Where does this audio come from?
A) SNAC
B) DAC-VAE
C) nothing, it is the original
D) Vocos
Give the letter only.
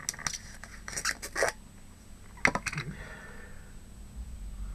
C